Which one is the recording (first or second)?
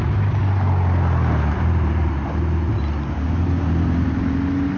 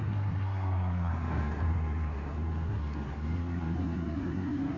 first